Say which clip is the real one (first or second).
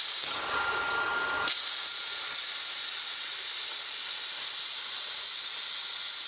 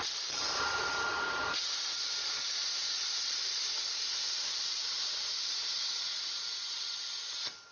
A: first